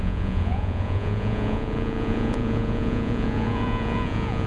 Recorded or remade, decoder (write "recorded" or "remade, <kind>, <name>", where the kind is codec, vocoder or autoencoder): remade, vocoder, Vocos